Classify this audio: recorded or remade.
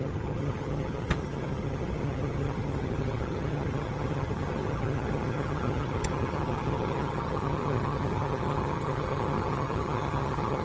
remade